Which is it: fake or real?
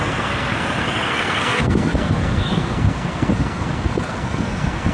fake